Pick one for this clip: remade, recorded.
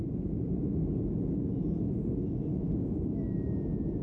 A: recorded